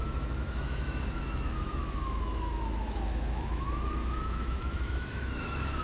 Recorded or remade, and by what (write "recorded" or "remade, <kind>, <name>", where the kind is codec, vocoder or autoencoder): remade, autoencoder, DAC-VAE